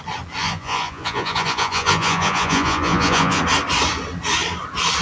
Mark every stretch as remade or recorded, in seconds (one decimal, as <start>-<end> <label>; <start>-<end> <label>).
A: 0.0-0.4 recorded; 0.4-3.4 remade; 3.4-5.0 recorded